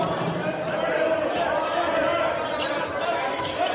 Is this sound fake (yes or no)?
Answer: yes